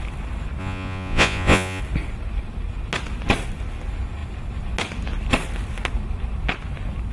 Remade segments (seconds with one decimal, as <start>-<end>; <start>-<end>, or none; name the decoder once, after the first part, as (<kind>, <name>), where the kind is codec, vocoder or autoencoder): 0.6-1.8 (vocoder, Vocos)